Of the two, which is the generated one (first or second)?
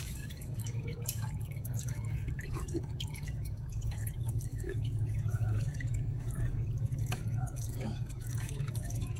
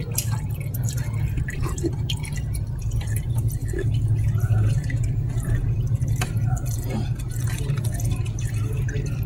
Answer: first